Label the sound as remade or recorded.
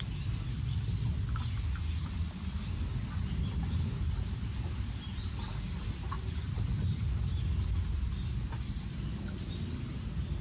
recorded